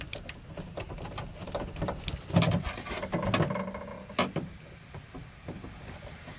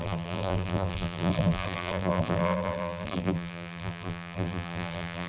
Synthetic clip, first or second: second